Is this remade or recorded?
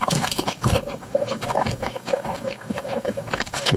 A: remade